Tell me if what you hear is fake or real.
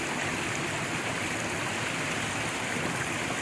real